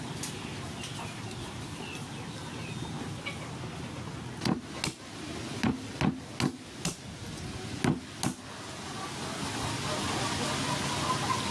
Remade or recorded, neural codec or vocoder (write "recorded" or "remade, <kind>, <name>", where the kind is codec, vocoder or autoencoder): recorded